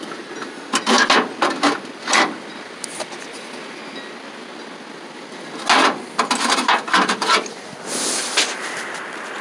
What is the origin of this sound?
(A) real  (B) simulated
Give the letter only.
A